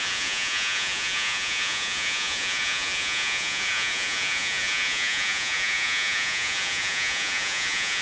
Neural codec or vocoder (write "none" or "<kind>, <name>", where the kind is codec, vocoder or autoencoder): vocoder, Vocos